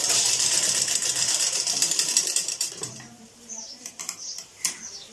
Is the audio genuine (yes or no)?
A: no